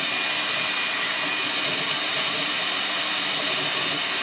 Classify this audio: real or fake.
real